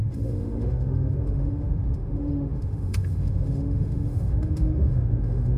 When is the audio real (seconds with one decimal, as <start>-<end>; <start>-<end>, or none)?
none